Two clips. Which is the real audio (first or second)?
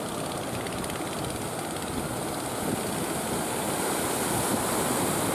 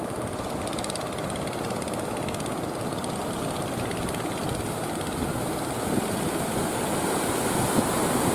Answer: first